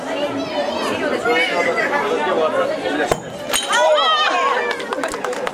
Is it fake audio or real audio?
real